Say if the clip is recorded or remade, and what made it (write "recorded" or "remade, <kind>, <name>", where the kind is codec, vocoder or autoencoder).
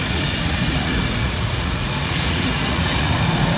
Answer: remade, vocoder, Vocos